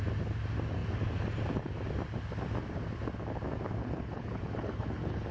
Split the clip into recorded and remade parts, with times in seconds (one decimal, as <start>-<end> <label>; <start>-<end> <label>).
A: 0.0-3.8 recorded; 3.8-5.3 remade